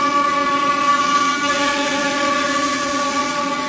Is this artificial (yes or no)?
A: yes